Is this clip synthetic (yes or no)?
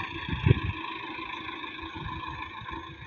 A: no